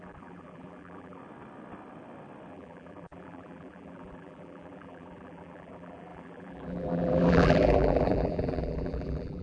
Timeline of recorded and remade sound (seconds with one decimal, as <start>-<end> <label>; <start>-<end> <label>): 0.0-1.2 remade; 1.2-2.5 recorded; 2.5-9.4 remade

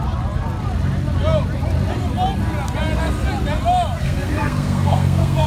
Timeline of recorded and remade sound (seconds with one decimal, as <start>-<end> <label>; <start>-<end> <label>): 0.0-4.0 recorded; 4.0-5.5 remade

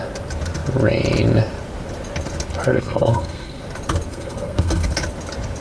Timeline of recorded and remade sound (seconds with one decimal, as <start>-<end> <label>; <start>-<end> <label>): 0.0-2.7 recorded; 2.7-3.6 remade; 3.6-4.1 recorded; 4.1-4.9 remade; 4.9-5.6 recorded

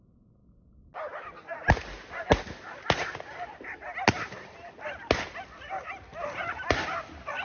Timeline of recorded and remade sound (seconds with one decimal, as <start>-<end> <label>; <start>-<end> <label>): 0.0-7.4 recorded